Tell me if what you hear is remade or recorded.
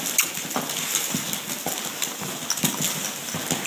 recorded